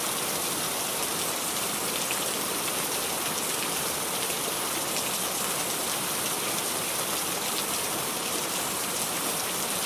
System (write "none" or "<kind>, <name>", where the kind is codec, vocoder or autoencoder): vocoder, BigVGAN v2